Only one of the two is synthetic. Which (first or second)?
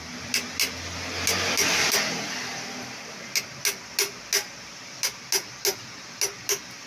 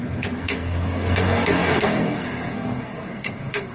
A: second